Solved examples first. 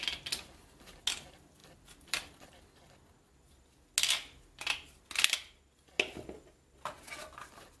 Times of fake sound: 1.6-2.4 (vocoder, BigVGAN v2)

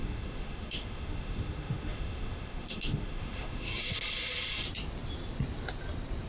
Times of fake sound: 0.0-3.7 (autoencoder, DAC-VAE)

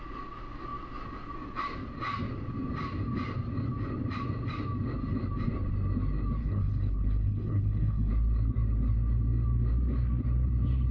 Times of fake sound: 6.4-8.1 (codec, HILCodec)

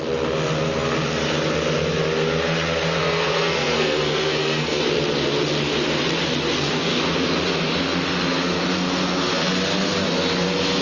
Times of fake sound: 3.0-4.8 (codec, SNAC); 6.5-7.0

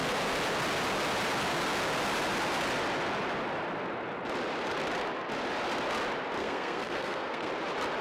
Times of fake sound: 6.4-7.5 (codec, SNAC)